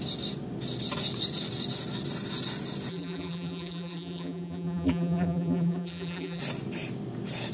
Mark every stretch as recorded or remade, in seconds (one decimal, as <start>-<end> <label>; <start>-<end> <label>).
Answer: 0.0-2.9 recorded; 2.9-6.4 remade; 6.4-7.5 recorded